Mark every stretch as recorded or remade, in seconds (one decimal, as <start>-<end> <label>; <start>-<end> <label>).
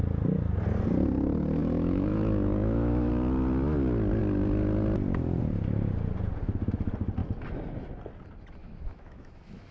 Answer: 0.0-1.6 recorded; 1.6-3.1 remade; 3.1-8.6 recorded; 8.6-9.7 remade